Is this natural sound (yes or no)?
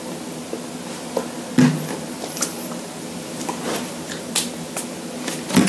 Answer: yes